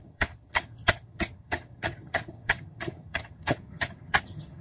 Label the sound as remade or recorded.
remade